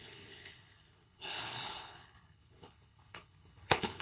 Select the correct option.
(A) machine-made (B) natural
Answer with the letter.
A